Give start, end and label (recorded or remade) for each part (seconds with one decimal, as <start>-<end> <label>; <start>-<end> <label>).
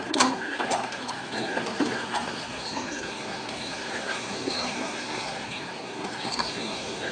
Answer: 0.0-7.1 remade